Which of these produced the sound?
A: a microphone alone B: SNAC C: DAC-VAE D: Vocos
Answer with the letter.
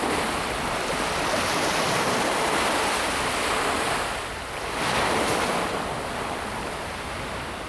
A